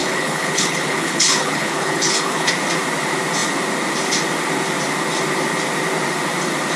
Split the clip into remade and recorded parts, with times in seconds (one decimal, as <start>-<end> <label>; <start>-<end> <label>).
0.0-2.5 remade; 2.5-6.8 recorded